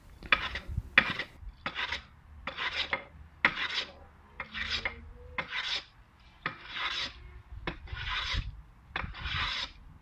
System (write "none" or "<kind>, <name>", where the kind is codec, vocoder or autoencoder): none